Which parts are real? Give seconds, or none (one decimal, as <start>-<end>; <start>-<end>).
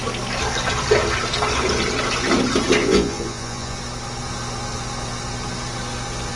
0.0-2.8; 3.8-6.4